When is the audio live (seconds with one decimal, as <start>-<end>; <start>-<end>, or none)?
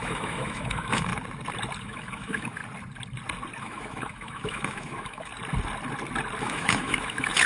1.1-1.8; 2.6-3.6; 5.3-6.4